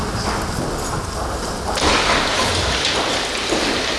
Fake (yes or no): no